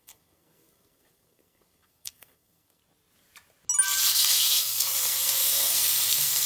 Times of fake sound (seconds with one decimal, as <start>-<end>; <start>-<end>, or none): 0.0-2.8; 4.0-6.5